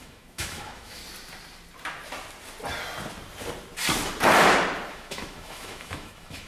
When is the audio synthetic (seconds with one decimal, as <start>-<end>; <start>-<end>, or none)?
0.0-1.0; 4.9-6.5